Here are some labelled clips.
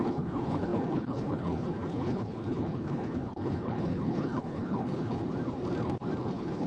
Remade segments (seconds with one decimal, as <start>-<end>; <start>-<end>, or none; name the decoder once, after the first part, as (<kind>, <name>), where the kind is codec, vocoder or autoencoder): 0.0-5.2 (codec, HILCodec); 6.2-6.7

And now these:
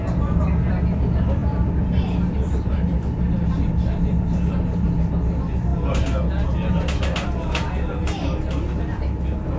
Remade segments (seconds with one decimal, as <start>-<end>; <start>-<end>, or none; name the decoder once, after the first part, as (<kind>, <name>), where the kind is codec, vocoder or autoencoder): none

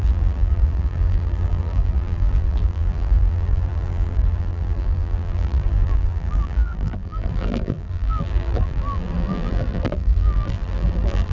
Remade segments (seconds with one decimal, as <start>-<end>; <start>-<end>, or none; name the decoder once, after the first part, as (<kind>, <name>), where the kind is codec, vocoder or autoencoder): 0.0-11.3 (vocoder, BigVGAN v2)

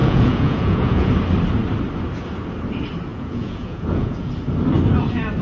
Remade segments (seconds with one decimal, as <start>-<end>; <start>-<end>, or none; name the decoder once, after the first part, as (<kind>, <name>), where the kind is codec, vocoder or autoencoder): 0.0-1.1 (vocoder, Vocos); 3.1-4.3